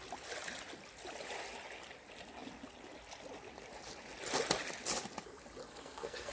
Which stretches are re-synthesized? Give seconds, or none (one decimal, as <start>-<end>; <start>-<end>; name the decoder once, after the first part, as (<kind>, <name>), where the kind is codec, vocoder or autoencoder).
5.6-6.3 (codec, SNAC)